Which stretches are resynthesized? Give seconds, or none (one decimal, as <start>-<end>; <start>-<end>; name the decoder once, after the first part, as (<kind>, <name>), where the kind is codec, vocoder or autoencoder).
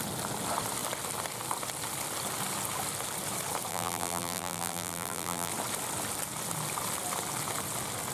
3.7-5.5 (vocoder, BigVGAN v2)